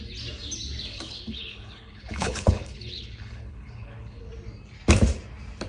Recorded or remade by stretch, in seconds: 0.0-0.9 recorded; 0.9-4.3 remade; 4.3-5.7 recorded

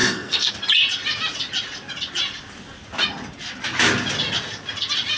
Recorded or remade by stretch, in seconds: 0.0-0.5 remade; 0.5-5.2 recorded